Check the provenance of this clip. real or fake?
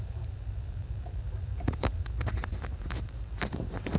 fake